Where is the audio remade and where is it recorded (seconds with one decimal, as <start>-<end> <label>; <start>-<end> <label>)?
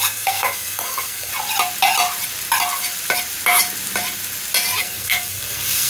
0.0-1.3 remade; 1.3-4.8 recorded; 4.8-5.9 remade